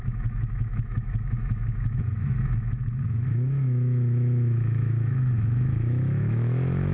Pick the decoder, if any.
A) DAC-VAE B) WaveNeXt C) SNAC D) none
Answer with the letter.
A